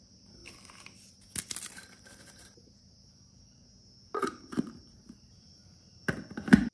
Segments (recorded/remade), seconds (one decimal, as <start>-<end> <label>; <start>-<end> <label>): 0.0-0.4 remade; 0.4-1.7 recorded; 1.7-3.6 remade; 3.6-4.4 recorded; 4.4-6.0 remade; 6.0-6.7 recorded